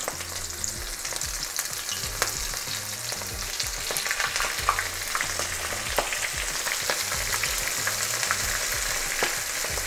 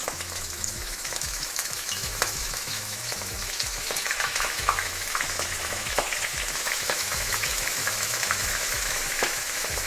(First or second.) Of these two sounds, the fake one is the second